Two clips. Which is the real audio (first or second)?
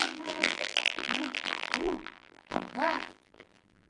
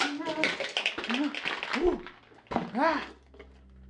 second